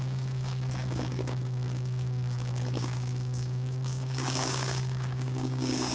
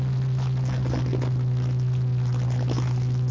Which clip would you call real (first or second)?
second